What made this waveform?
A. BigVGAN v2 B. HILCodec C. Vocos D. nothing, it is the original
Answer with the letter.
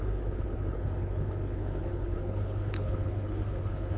B